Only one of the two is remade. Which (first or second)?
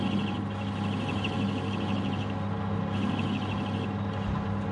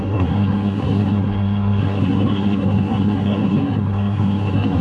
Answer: second